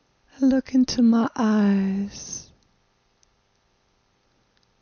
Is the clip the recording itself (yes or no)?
yes